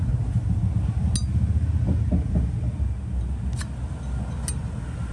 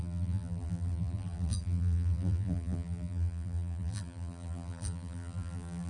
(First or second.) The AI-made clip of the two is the second